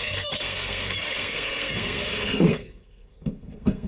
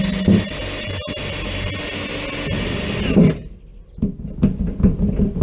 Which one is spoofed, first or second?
first